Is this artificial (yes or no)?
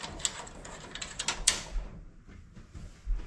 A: no